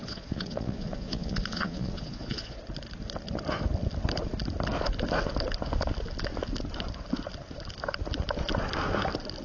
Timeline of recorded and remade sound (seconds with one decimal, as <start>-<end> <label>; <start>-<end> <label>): 0.0-2.6 remade; 2.6-9.4 recorded

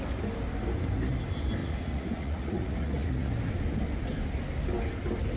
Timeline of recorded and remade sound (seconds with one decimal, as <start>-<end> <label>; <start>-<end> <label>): 0.0-1.6 recorded; 1.6-3.3 remade; 3.3-5.4 recorded

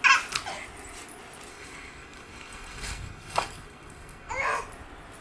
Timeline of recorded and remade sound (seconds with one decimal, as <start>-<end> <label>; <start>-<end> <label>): 0.0-1.5 recorded; 1.5-4.3 remade; 4.3-5.2 recorded

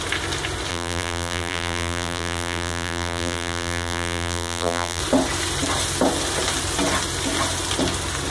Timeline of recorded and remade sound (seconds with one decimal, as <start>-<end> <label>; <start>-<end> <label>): 0.0-0.7 recorded; 0.7-5.0 remade; 5.0-8.3 recorded

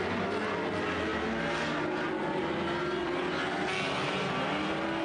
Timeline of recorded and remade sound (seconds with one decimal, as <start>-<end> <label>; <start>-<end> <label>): 0.0-5.0 recorded